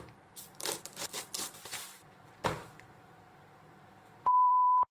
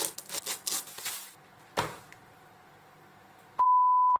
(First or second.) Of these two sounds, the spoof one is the first